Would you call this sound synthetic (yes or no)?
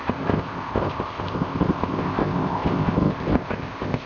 yes